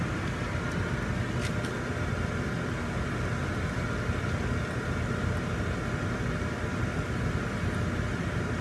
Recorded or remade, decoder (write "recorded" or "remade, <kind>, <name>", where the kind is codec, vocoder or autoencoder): recorded